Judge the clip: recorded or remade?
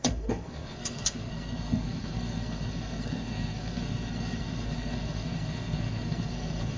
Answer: remade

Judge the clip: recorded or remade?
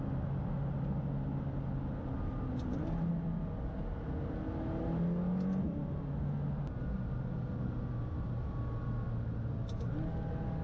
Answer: recorded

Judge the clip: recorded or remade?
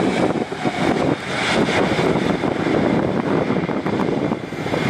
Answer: recorded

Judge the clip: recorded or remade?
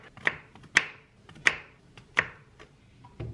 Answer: recorded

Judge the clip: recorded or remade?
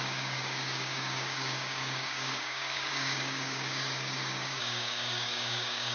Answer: remade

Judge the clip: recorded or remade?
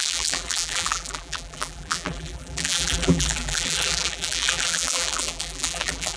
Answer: remade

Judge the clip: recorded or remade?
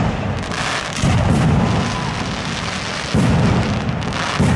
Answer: recorded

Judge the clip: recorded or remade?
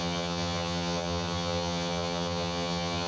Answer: remade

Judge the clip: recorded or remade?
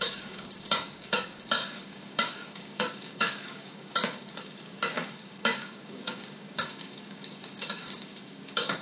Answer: remade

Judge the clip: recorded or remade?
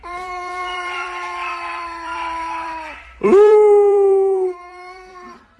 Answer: remade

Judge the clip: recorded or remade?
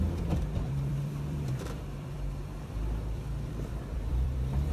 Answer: remade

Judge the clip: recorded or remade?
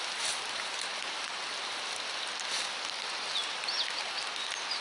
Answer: remade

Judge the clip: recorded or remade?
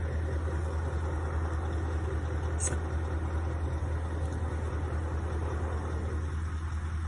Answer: recorded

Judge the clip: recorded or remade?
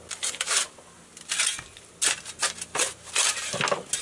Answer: recorded